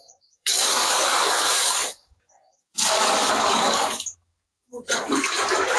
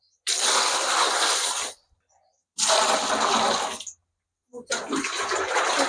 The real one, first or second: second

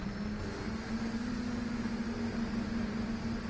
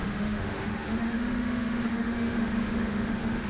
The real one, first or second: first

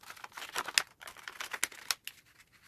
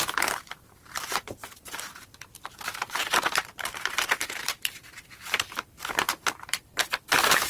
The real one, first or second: first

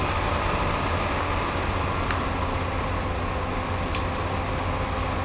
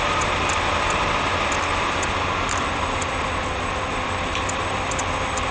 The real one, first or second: first